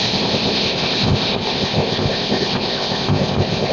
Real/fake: fake